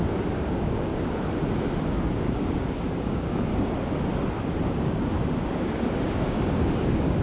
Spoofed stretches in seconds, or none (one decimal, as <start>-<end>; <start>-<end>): 0.0-0.9; 1.9-3.5; 4.7-7.2